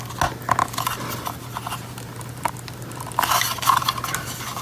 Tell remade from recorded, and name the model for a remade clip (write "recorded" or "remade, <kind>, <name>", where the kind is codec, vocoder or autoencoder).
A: recorded